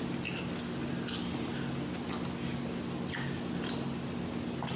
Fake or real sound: real